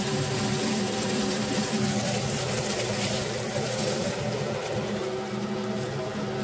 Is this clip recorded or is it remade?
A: remade